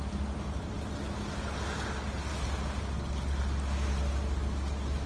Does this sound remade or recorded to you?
recorded